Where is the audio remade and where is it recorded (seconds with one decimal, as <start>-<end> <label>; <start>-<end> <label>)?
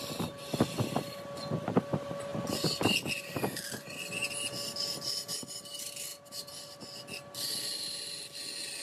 0.0-6.1 recorded; 6.1-7.0 remade; 7.0-8.8 recorded